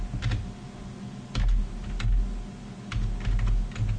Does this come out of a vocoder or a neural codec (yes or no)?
no